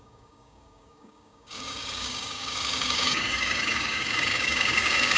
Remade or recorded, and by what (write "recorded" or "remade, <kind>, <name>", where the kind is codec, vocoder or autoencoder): remade, codec, DAC